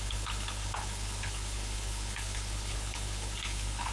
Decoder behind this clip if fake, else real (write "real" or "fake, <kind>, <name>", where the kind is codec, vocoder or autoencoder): fake, codec, HILCodec